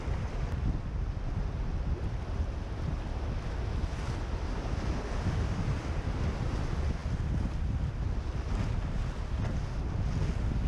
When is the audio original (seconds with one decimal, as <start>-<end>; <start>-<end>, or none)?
0.0-10.7